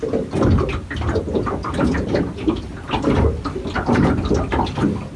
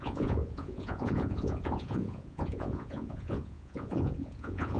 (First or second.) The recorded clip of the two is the first